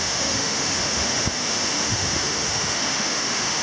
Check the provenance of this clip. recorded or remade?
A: remade